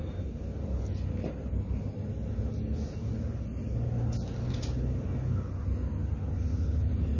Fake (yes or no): no